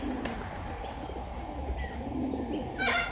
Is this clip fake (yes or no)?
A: no